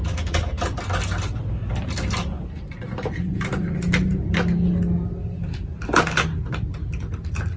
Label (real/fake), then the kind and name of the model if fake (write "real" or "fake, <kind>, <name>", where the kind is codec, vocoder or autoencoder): real